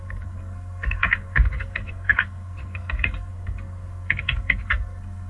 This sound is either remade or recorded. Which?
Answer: remade